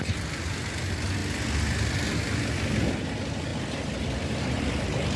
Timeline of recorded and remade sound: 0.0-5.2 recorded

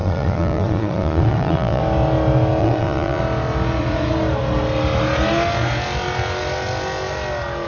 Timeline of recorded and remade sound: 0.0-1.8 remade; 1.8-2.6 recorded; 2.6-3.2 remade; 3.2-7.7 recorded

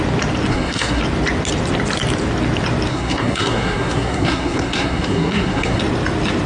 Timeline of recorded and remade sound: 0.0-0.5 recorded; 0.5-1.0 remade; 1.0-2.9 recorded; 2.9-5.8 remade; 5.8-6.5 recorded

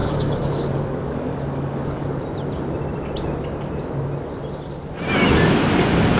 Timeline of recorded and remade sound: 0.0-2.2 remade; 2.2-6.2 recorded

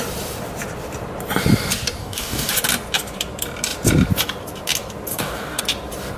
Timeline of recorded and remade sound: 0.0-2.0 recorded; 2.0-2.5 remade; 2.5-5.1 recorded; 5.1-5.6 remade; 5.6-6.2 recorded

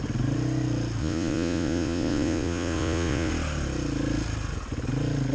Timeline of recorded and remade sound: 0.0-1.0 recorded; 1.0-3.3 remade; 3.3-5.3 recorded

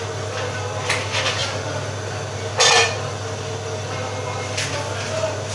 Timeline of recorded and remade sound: 0.0-5.5 recorded